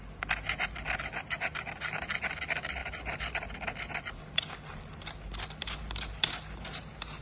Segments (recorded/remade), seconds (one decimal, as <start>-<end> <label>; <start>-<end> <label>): 0.0-7.2 recorded